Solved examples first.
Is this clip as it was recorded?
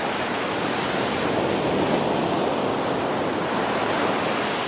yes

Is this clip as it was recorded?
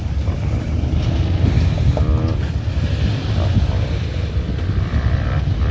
yes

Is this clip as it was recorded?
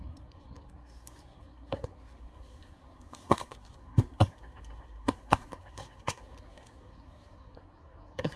no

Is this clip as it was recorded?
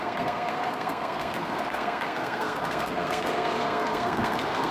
no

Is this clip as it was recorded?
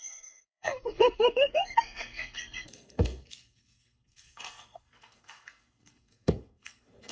no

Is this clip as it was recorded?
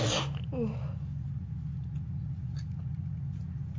yes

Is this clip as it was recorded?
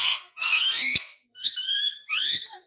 no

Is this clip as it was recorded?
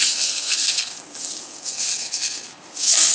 no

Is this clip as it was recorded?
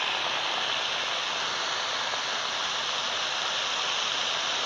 yes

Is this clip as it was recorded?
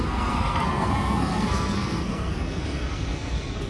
no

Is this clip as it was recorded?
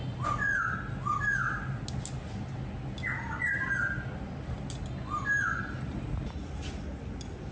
yes